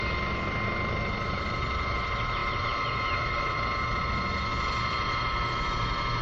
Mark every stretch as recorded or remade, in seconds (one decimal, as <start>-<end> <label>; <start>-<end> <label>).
0.0-2.4 recorded; 2.4-4.0 remade; 4.0-4.5 recorded; 4.5-5.5 remade; 5.5-6.2 recorded